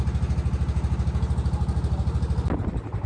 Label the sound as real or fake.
real